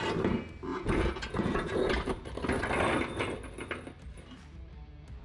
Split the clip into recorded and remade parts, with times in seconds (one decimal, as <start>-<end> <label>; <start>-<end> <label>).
0.0-0.7 recorded; 0.7-1.9 remade; 1.9-5.2 recorded